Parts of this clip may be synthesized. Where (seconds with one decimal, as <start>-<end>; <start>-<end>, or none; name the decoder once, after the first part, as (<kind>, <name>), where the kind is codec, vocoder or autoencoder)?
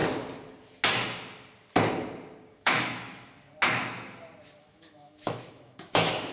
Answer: 2.5-3.5 (autoencoder, DAC-VAE); 4.6-6.3